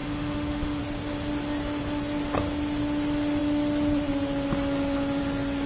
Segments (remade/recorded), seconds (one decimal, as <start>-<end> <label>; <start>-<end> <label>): 0.0-0.8 remade; 0.8-5.7 recorded